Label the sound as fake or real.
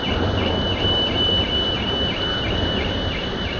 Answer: fake